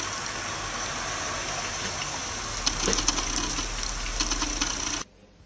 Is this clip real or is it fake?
real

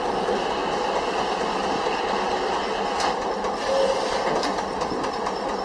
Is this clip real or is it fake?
real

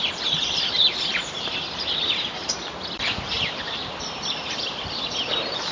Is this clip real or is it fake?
fake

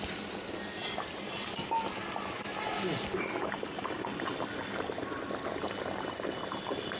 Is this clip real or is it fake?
real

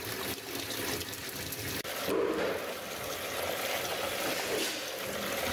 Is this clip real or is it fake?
real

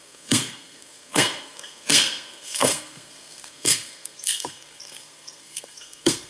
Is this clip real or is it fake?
fake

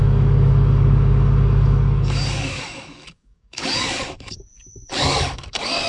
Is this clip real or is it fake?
fake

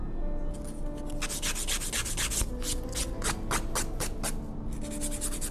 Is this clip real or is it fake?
real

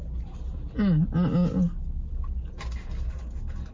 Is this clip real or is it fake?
real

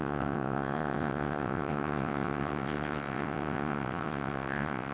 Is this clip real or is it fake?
fake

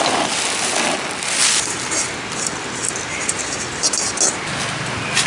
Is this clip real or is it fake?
real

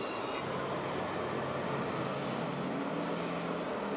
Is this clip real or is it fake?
real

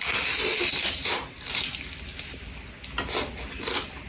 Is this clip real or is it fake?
real